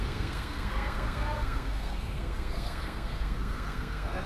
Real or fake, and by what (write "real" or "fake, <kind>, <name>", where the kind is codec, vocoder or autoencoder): fake, codec, SNAC